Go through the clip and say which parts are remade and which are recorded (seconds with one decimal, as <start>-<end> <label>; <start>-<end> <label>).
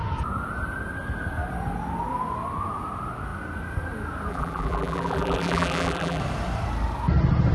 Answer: 0.0-4.3 recorded; 4.3-6.2 remade; 6.2-7.5 recorded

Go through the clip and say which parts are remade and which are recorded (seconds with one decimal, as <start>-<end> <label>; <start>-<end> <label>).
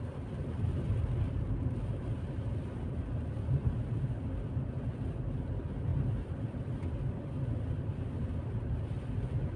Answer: 0.0-9.6 recorded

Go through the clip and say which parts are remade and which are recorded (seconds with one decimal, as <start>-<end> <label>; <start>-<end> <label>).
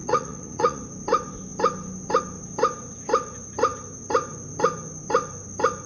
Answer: 0.0-0.8 remade; 0.8-5.9 recorded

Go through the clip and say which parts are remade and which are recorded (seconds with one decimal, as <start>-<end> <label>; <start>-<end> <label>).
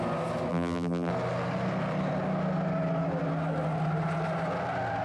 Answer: 0.0-0.5 recorded; 0.5-1.1 remade; 1.1-5.0 recorded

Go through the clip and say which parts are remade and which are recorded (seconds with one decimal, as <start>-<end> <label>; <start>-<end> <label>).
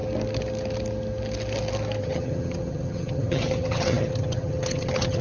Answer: 0.0-2.0 recorded; 2.0-5.2 remade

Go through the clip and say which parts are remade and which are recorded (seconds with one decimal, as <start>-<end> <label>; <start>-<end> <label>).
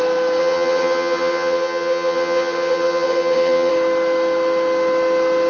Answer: 0.0-0.4 recorded; 0.4-3.7 remade; 3.7-5.5 recorded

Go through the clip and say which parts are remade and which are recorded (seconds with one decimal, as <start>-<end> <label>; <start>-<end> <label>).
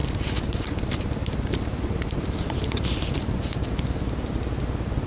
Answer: 0.0-3.1 remade; 3.1-5.1 recorded